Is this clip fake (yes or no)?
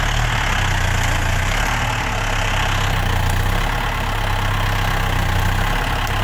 no